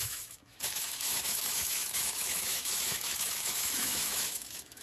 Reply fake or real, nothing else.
fake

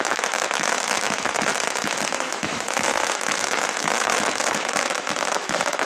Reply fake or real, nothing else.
fake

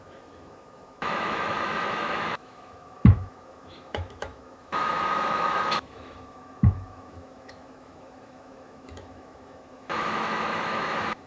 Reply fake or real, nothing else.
fake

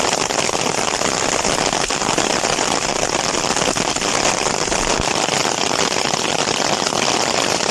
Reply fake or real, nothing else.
real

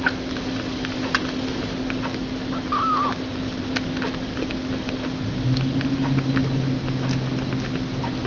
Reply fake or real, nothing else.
real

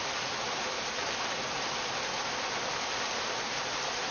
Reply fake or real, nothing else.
real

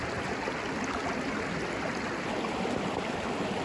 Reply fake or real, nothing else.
real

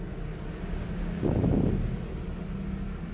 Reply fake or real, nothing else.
real